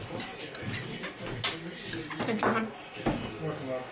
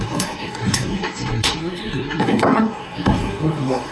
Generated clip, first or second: second